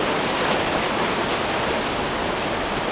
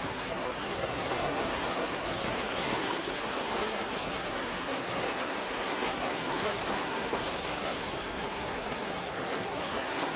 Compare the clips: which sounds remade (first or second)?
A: second